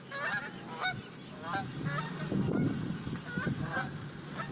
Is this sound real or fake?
real